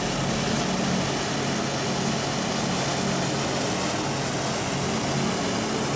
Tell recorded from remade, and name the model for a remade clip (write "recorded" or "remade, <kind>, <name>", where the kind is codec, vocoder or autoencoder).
recorded